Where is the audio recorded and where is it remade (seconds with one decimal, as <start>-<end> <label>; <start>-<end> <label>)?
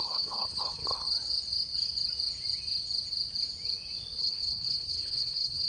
0.0-0.8 remade; 0.8-4.2 recorded; 4.2-5.7 remade